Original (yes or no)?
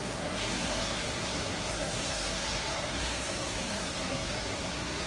no